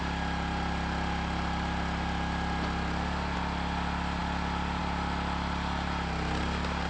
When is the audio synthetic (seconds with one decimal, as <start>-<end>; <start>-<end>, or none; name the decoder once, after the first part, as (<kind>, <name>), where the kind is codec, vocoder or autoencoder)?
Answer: none